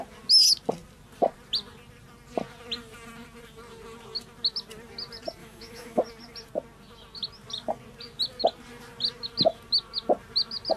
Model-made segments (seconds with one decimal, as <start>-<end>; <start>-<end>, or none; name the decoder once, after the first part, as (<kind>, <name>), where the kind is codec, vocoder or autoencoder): 5.4-6.0 (autoencoder, DAC-VAE)